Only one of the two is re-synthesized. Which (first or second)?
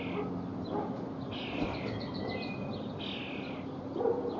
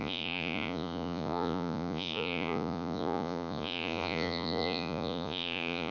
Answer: second